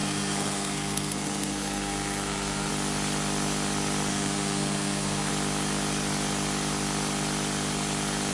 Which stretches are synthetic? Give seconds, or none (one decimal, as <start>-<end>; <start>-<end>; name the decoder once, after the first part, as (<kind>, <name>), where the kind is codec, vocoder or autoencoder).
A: 0.0-2.7 (codec, SNAC); 4.1-5.3